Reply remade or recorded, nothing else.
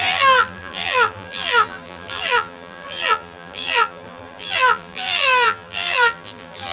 remade